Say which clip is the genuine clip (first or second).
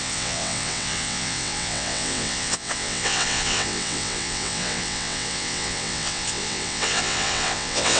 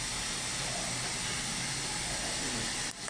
second